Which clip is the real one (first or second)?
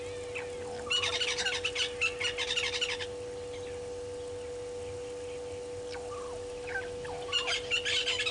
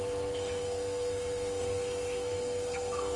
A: first